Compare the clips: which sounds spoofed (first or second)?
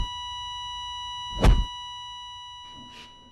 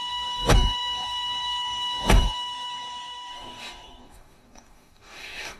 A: second